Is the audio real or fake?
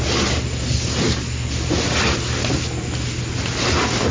real